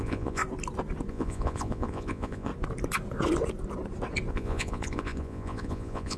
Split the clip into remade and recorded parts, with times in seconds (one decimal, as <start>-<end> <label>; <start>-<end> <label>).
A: 0.0-0.4 remade; 0.4-1.1 recorded; 1.1-2.5 remade; 2.5-4.3 recorded; 4.3-6.2 remade